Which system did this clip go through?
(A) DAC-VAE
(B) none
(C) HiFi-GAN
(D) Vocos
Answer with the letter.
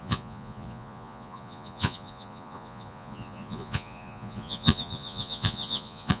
D